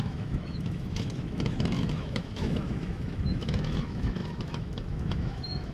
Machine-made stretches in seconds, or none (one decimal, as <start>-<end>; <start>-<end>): 0.0-5.7